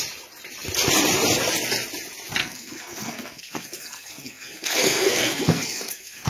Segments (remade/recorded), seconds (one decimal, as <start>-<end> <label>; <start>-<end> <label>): 0.0-2.4 recorded; 2.4-6.3 remade